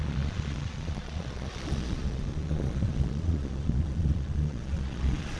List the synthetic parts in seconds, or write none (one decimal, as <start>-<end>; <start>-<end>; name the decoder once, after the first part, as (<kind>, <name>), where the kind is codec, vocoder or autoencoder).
0.0-5.4 (vocoder, Vocos)